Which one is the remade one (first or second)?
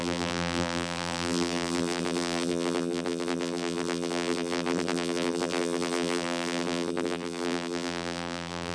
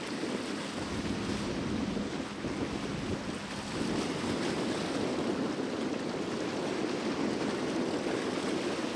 first